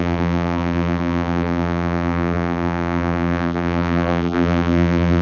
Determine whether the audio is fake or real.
fake